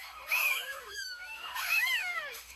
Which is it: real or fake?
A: fake